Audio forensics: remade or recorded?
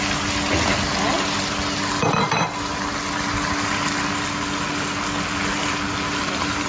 recorded